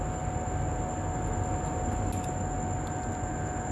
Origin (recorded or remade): recorded